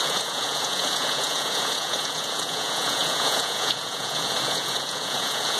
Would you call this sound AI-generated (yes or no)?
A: yes